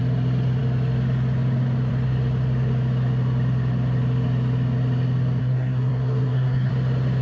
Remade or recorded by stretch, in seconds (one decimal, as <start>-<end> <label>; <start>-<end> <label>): 0.0-5.4 recorded; 5.4-6.7 remade; 6.7-7.2 recorded